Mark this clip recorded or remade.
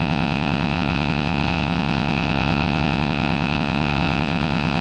remade